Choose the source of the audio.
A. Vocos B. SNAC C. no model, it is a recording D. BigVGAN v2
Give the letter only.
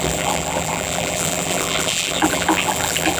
D